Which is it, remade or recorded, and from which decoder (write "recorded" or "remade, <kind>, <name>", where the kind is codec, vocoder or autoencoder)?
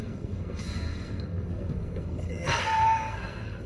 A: remade, codec, SNAC